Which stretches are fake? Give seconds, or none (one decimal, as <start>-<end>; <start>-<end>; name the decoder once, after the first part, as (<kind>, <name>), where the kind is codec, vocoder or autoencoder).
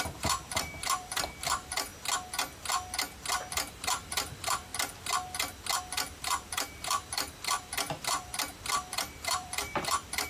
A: 0.0-1.9 (vocoder, BigVGAN v2); 3.5-4.7; 5.8-8.3; 8.9-10.3